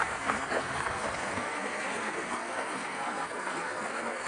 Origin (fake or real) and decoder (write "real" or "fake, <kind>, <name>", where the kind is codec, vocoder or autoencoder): fake, codec, SNAC